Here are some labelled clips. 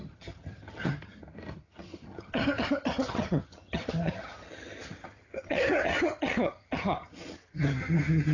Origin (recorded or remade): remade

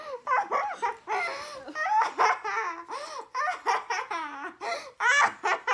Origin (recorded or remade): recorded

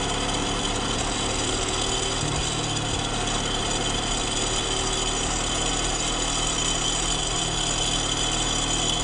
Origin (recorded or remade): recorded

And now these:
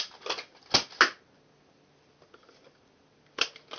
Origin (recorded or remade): recorded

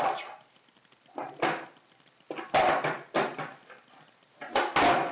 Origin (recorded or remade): recorded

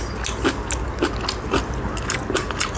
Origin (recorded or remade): recorded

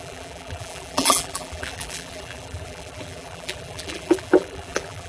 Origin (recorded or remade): remade